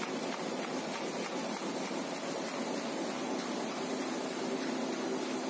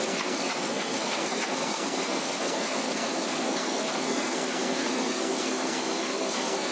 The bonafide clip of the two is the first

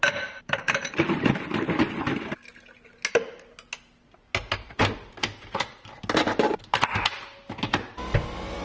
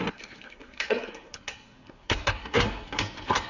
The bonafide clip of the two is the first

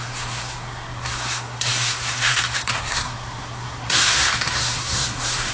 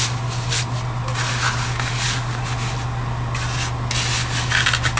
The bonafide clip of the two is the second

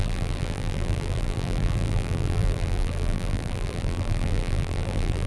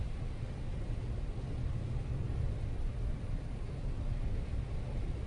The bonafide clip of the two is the second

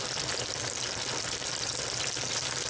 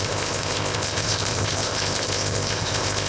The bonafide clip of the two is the first